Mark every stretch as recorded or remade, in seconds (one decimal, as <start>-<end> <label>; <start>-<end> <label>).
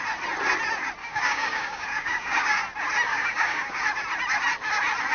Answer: 0.0-1.0 recorded; 1.0-2.6 remade; 2.6-3.1 recorded; 3.1-3.8 remade; 3.8-5.1 recorded